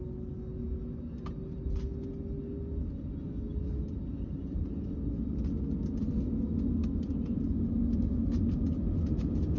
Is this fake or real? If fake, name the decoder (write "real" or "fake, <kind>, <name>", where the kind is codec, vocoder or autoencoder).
real